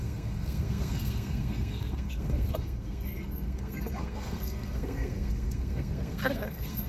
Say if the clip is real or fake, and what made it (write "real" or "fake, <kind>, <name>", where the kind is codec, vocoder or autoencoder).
fake, codec, SNAC